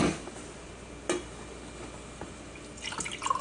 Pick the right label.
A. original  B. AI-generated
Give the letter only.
A